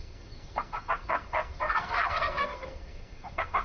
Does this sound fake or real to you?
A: fake